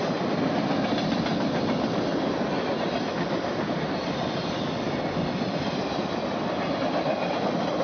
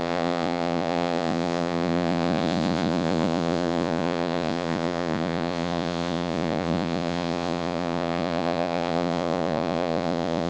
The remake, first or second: second